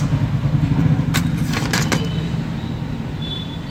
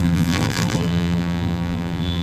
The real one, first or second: first